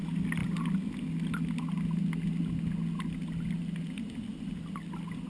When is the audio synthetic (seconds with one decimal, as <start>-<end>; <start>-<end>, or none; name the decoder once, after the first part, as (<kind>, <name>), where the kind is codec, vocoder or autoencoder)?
none